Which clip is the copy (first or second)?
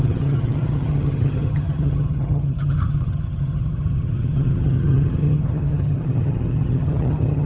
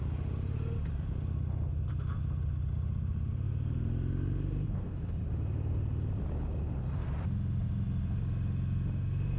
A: first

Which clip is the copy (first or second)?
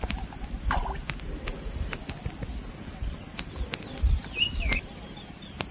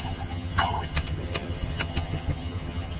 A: second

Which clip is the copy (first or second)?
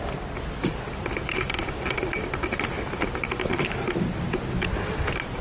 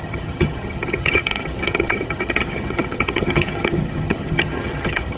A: second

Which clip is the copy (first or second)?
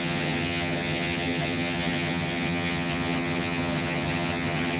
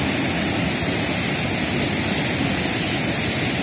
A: first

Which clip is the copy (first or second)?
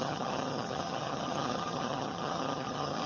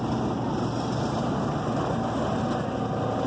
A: first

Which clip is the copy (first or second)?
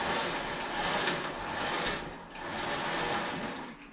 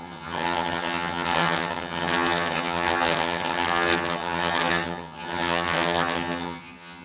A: second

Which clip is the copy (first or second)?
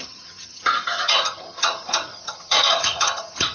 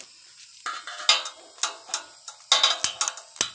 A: first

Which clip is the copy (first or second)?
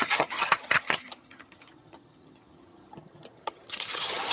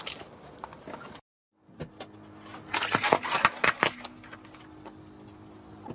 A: first